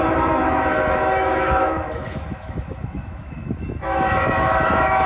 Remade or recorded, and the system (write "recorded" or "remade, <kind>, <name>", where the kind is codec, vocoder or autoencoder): remade, autoencoder, DAC-VAE